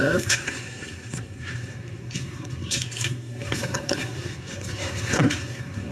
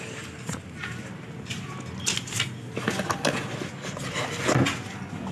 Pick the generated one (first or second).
first